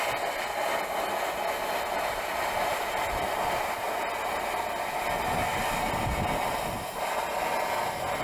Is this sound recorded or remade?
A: recorded